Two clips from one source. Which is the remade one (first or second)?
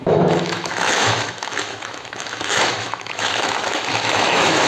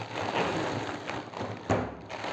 first